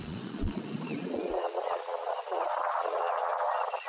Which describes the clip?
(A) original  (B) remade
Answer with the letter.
B